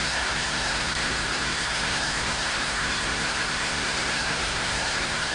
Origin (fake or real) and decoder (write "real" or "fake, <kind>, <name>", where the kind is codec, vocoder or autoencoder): fake, codec, SNAC